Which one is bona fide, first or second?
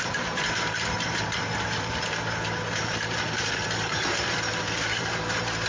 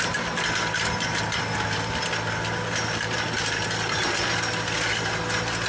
second